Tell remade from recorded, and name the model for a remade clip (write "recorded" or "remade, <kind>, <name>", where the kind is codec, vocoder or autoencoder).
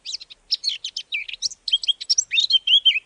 recorded